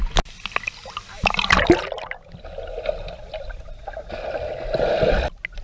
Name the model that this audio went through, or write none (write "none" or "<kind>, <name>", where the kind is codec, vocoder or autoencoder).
none